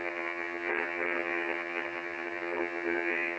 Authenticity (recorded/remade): remade